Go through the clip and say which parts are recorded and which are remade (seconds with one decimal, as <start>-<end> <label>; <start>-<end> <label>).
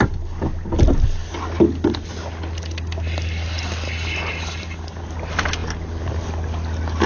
0.0-7.1 recorded